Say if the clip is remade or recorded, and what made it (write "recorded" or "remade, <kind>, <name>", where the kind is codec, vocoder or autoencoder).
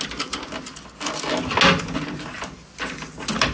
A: recorded